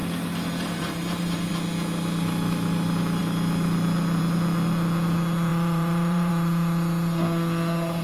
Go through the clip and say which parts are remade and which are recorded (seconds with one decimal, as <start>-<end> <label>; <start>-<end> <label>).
0.0-1.5 remade; 1.5-5.5 recorded; 5.5-6.3 remade; 6.3-8.0 recorded